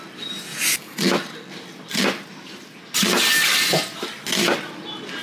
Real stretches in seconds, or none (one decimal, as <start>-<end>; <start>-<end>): 0.0-0.5; 2.0-5.2